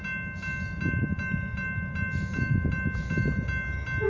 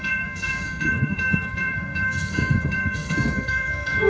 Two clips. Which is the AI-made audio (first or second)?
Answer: second